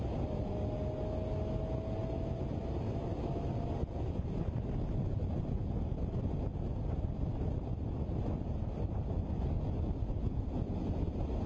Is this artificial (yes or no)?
no